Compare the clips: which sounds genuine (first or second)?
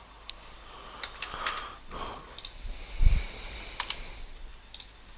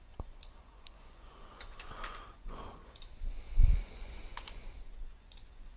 first